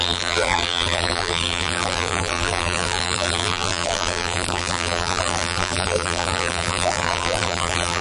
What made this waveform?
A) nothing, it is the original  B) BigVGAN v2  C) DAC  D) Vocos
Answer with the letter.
B